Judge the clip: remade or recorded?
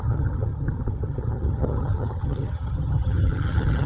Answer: remade